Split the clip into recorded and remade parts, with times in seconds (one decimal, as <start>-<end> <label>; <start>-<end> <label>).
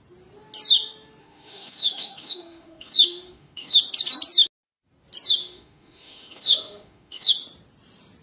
0.0-1.2 recorded; 1.2-3.8 remade; 3.8-5.4 recorded; 5.4-7.3 remade; 7.3-8.2 recorded